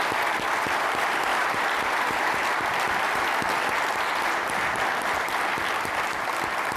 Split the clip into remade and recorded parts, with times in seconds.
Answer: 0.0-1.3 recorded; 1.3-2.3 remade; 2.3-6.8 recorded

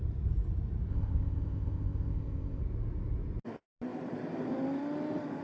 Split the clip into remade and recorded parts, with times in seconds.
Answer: 0.0-0.9 recorded; 0.9-2.6 remade; 2.6-5.4 recorded

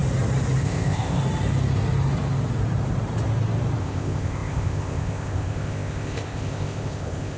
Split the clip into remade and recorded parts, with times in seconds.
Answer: 0.0-0.6 recorded; 0.6-1.2 remade; 1.2-3.8 recorded; 3.8-7.4 remade